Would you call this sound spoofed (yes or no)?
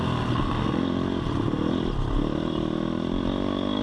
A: no